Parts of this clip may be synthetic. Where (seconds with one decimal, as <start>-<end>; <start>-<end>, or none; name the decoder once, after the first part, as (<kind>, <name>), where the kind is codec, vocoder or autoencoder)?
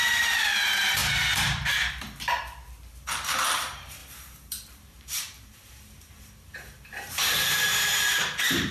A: 0.0-1.0 (vocoder, BigVGAN v2); 3.0-8.7